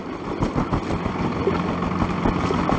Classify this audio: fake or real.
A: real